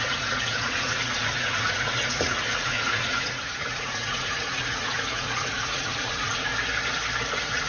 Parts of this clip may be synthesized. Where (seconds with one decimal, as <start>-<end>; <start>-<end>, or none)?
0.0-6.5; 7.3-7.7